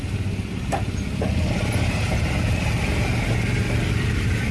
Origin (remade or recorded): recorded